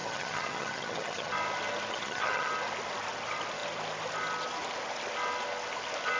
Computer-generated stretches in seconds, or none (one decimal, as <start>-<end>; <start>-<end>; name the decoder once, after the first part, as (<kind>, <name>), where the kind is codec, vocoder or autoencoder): 0.0-1.3 (vocoder, HiFi-GAN); 1.9-2.5